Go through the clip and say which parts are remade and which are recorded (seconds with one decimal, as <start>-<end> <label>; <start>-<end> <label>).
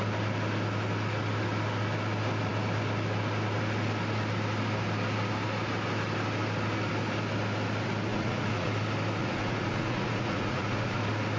0.0-8.1 recorded; 8.1-8.7 remade; 8.7-9.2 recorded; 9.2-11.0 remade; 11.0-11.4 recorded